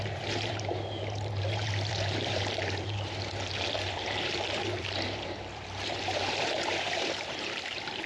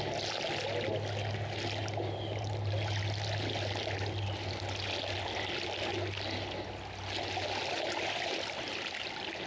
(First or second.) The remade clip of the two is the first